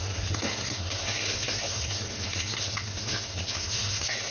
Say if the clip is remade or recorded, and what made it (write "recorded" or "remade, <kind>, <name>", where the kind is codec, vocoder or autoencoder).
remade, codec, SNAC